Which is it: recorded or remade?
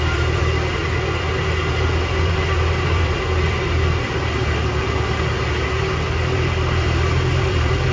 remade